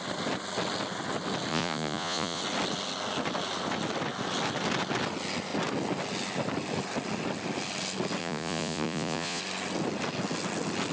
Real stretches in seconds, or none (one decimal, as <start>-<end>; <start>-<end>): 0.0-1.5; 2.4-8.2; 9.4-10.9